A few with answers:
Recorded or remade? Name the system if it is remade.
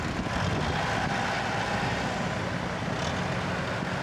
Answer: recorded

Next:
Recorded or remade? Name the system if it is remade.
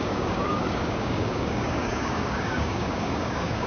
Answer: remade, codec, DAC